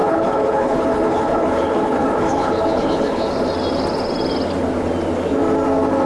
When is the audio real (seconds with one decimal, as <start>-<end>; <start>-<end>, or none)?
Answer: 3.3-6.1